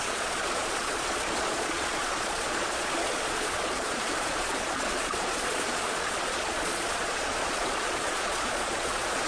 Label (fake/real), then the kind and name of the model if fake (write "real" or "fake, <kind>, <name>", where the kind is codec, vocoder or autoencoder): fake, vocoder, Vocos